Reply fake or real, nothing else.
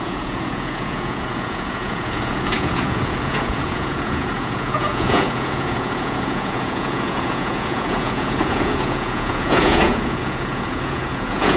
fake